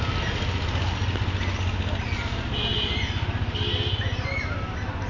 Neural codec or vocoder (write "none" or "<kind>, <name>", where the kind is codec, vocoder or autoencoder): none